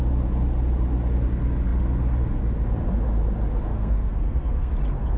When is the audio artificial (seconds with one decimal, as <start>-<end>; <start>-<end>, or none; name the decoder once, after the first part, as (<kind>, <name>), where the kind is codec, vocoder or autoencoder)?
3.7-4.7 (codec, SNAC)